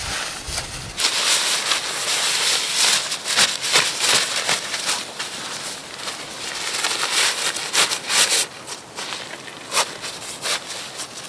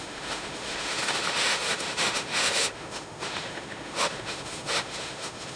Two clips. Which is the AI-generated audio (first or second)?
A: second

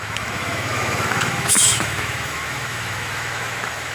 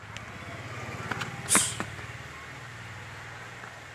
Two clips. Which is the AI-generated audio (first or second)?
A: first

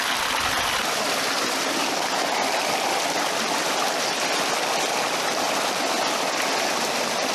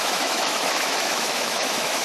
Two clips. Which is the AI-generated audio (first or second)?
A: second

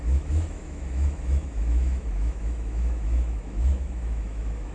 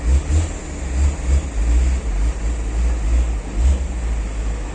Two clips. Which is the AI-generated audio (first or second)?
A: first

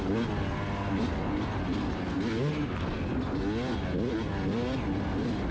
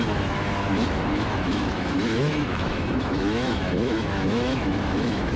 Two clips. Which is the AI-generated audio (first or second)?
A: second